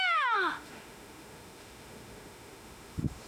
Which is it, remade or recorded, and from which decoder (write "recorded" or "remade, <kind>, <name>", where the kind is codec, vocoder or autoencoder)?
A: remade, autoencoder, DAC-VAE